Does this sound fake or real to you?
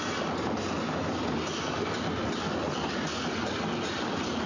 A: real